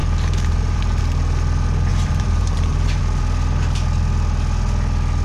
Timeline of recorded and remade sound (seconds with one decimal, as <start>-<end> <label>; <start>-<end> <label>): 0.0-1.0 remade; 1.0-1.9 recorded; 1.9-3.0 remade; 3.0-5.2 recorded